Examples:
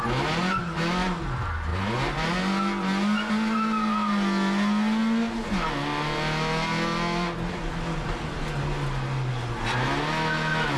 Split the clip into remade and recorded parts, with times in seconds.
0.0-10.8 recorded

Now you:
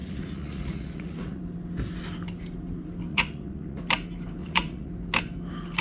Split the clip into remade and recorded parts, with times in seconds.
0.0-1.4 remade; 1.4-3.1 recorded; 3.1-3.8 remade; 3.8-4.4 recorded; 4.4-4.9 remade; 4.9-5.8 recorded

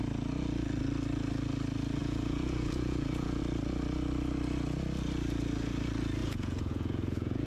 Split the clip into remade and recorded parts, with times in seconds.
0.0-2.0 recorded; 2.0-3.4 remade; 3.4-6.2 recorded; 6.2-7.5 remade